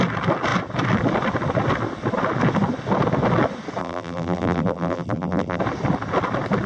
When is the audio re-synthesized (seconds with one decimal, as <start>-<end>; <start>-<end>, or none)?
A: 3.8-5.6